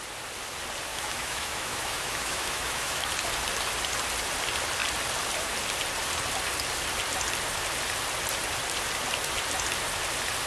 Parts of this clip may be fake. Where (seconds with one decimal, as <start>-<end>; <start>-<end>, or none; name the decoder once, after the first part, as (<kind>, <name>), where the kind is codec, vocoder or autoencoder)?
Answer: 0.9-3.1 (autoencoder, DAC-VAE)